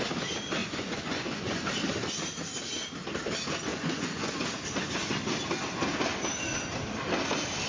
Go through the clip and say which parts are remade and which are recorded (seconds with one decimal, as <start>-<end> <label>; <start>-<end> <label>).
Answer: 0.0-0.6 recorded; 0.6-1.7 remade; 1.7-3.7 recorded; 3.7-4.3 remade; 4.3-7.7 recorded